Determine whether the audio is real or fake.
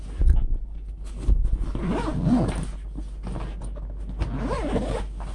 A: real